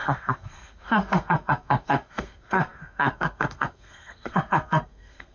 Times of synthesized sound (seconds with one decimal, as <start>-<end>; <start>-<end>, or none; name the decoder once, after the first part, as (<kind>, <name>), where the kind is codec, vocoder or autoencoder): 0.0-5.3 (codec, SNAC)